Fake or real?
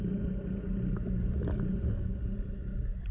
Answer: real